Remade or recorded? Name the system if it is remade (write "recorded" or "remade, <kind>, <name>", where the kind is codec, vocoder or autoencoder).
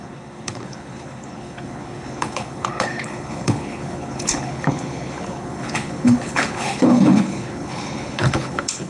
remade, codec, HILCodec